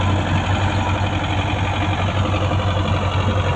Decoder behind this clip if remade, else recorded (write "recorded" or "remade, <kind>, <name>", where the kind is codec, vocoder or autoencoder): recorded